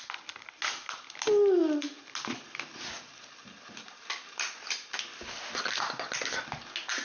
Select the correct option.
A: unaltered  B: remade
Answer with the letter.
A